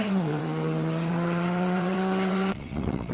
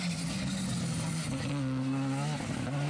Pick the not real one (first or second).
first